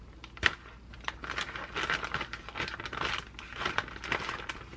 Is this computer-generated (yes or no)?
no